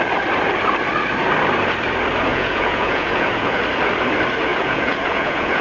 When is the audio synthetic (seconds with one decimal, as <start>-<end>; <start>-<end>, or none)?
2.3-3.6; 4.5-5.6